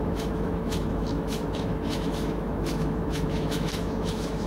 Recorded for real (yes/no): no